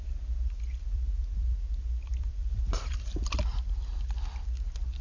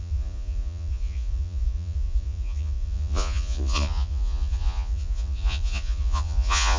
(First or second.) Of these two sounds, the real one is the first